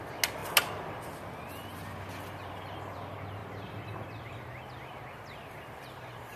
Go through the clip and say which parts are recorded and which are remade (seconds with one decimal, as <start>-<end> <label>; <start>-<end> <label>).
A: 0.0-6.4 recorded